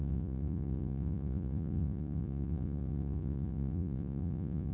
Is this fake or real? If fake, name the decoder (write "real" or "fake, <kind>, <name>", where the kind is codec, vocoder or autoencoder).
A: fake, vocoder, Vocos